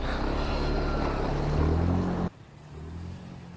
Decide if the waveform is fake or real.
real